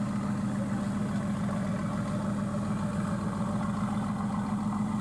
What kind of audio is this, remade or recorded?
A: recorded